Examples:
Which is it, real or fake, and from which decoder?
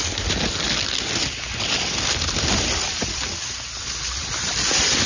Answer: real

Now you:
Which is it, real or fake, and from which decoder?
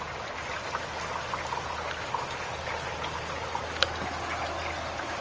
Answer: real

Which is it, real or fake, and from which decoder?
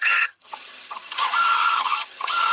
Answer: fake, vocoder, HiFi-GAN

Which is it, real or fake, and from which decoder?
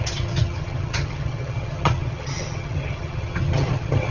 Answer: fake, vocoder, HiFi-GAN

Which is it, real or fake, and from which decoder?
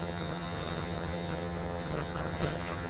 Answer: fake, vocoder, HiFi-GAN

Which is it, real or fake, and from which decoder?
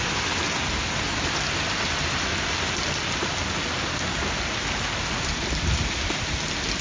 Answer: real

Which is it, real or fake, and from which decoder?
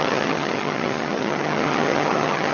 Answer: fake, vocoder, HiFi-GAN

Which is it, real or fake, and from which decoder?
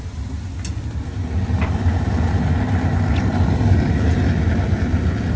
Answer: real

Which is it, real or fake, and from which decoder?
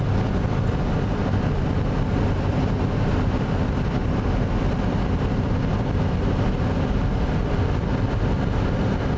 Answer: real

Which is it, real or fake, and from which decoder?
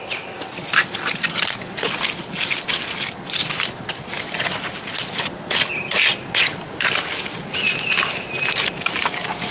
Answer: real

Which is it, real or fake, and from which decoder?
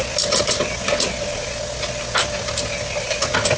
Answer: real